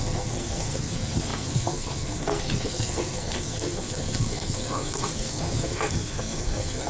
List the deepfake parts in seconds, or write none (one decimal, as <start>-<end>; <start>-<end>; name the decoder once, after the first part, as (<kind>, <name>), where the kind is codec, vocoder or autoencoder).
0.0-6.9 (codec, SNAC)